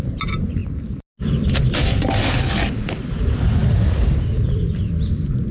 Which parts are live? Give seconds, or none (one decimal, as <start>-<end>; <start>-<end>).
0.0-5.5